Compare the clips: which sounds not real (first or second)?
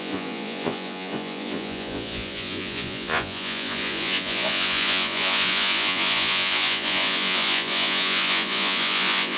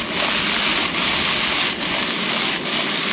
first